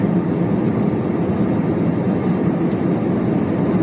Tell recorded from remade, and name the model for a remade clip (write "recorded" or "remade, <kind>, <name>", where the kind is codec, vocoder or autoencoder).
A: recorded